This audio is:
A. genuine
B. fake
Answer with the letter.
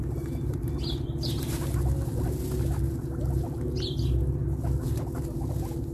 A